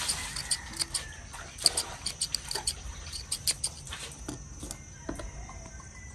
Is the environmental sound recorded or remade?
recorded